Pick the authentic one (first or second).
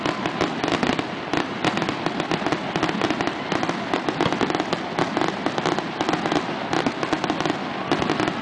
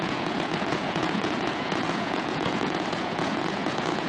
first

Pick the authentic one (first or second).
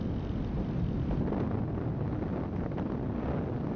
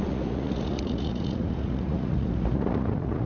first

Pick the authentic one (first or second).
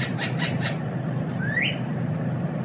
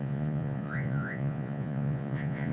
first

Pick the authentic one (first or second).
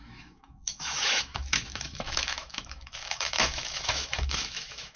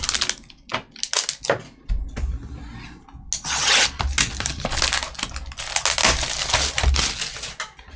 second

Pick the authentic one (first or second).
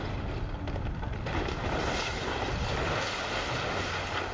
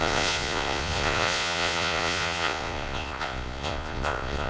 first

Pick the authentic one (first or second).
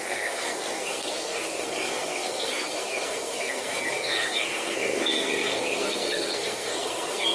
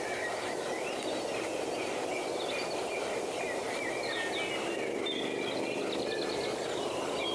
second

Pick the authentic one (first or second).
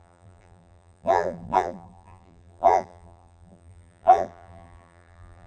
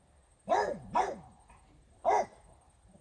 second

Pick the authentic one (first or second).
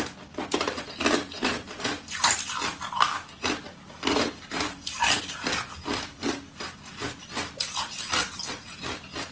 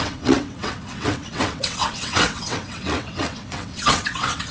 first